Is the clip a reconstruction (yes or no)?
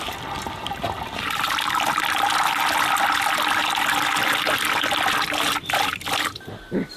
no